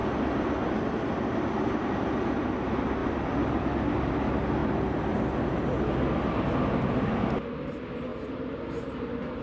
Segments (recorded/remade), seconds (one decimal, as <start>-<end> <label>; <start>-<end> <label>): 0.0-0.7 remade; 0.7-3.0 recorded; 3.0-4.1 remade; 4.1-4.6 recorded; 4.6-5.5 remade; 5.5-9.4 recorded